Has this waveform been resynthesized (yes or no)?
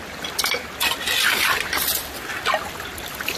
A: no